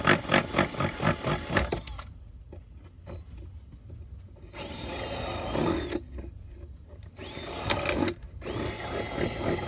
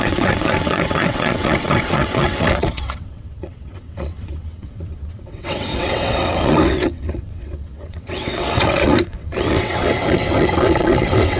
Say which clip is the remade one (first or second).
second